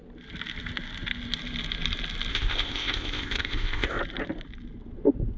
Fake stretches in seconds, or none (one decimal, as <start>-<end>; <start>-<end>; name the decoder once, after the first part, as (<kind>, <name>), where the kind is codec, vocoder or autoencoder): 2.3-4.0 (codec, ZipCodec)